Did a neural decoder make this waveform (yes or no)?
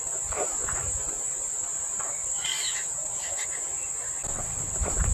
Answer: yes